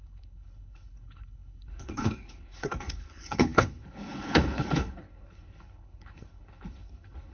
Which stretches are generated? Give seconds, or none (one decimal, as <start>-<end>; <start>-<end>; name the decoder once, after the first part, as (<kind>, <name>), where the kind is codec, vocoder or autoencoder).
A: 0.0-7.3 (codec, HILCodec)

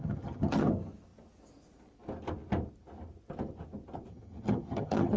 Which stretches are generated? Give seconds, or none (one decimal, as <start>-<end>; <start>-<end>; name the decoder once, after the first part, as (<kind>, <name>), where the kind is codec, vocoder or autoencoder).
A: 0.0-0.7 (vocoder, HiFi-GAN); 4.1-5.2

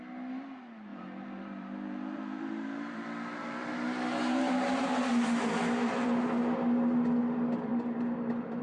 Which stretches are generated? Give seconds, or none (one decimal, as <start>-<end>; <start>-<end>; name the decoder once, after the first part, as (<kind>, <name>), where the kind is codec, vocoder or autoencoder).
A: 0.9-4.9 (vocoder, BigVGAN v2)

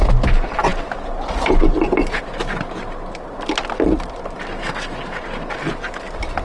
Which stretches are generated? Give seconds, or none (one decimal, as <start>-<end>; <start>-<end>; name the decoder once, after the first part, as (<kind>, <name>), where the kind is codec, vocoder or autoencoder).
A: none

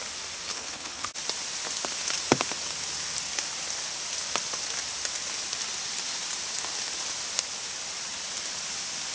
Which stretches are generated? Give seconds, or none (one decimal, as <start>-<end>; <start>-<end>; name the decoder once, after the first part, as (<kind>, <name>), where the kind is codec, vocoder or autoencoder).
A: 0.5-1.1 (codec, HILCodec)

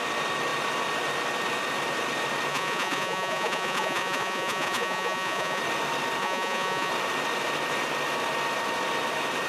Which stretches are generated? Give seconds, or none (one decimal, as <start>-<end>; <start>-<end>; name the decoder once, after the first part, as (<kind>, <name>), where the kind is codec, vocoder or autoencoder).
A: 2.5-5.6 (vocoder, Vocos); 6.2-6.9

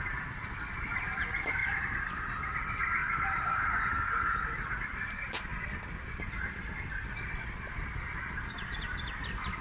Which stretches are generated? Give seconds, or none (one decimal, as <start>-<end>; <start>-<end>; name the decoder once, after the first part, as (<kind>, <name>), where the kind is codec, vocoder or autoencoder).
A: 0.0-1.6 (vocoder, BigVGAN v2); 2.3-3.0; 3.8-5.5; 6.3-9.6

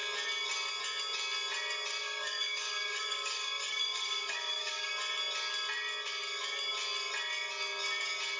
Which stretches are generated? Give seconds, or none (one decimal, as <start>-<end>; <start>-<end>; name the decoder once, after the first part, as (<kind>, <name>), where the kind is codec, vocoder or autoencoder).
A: 2.0-4.9 (codec, DAC)